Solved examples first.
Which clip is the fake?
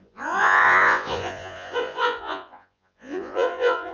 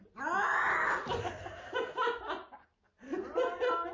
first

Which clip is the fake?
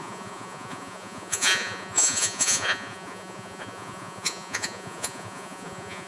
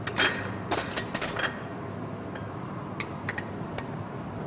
first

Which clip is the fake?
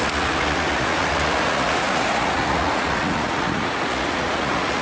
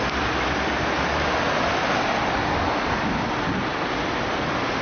first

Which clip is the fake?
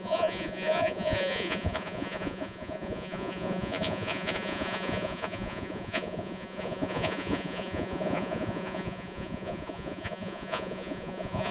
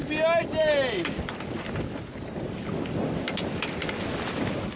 first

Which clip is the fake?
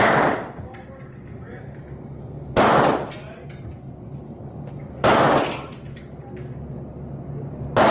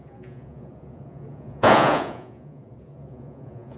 second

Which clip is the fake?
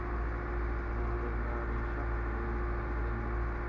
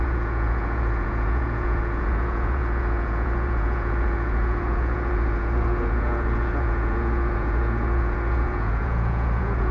second